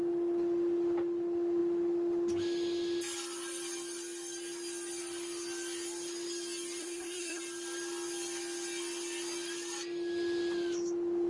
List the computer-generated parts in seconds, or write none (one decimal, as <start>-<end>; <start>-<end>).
6.8-7.4